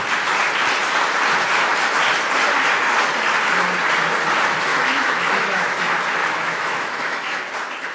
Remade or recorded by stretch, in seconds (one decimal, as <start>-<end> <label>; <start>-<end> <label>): 0.0-4.7 recorded; 4.7-5.8 remade; 5.8-6.2 recorded; 6.2-7.4 remade; 7.4-7.9 recorded